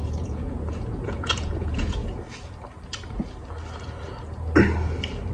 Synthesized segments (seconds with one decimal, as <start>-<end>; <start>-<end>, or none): 0.0-2.0